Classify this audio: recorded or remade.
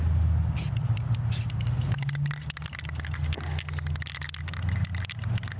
recorded